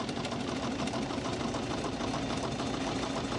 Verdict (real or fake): real